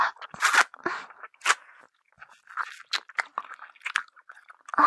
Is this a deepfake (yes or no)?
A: no